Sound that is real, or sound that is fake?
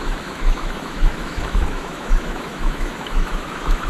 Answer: fake